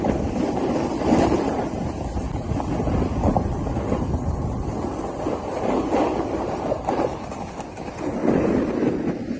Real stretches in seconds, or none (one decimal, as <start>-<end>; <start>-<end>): 0.0-9.4